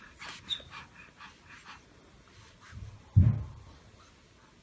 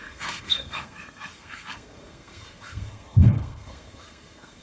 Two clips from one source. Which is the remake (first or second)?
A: second